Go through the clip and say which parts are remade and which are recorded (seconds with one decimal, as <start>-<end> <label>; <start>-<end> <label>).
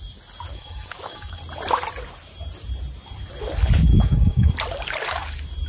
0.0-0.5 recorded; 0.5-1.4 remade; 1.4-3.9 recorded; 3.9-4.5 remade; 4.5-5.7 recorded